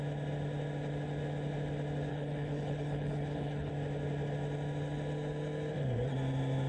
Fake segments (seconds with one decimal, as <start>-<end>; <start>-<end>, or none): 2.1-3.7